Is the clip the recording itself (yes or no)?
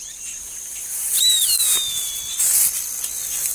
yes